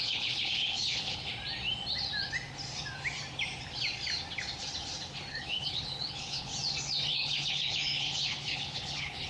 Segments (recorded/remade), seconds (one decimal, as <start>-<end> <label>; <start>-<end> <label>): 0.0-1.3 remade; 1.3-5.3 recorded; 5.3-6.5 remade; 6.5-7.1 recorded; 7.1-9.3 remade